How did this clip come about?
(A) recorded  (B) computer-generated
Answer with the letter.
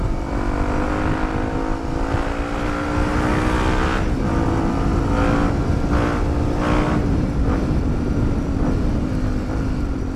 A